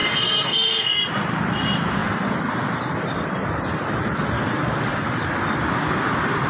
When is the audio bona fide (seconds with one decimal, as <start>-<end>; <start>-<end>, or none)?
1.0-6.5